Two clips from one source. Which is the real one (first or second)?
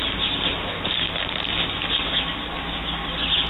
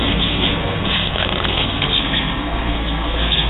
first